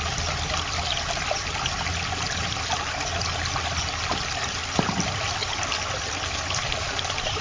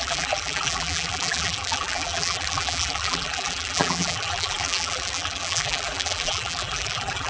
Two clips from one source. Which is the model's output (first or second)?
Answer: second